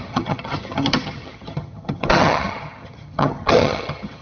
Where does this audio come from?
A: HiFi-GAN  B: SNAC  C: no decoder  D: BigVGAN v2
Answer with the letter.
A